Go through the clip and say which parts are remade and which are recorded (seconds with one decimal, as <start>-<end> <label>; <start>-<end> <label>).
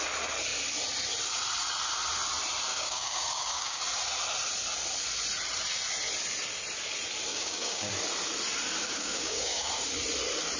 0.0-2.7 recorded; 2.7-3.8 remade; 3.8-7.3 recorded; 7.3-7.9 remade; 7.9-8.8 recorded; 8.8-9.7 remade; 9.7-10.6 recorded